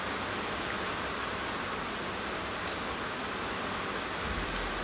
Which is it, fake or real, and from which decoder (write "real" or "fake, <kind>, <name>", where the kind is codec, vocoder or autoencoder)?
real